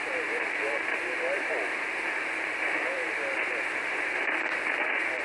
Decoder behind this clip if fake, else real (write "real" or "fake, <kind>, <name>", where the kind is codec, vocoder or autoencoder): real